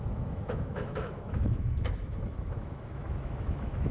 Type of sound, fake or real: fake